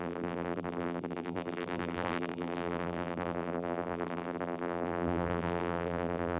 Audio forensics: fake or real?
fake